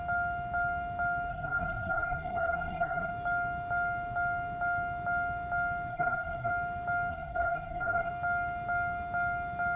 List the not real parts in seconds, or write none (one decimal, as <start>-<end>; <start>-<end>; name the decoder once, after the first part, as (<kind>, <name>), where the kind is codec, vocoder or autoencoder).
1.3-3.1 (codec, SNAC); 5.9-6.5; 7.1-8.1